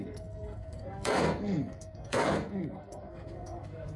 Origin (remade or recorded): remade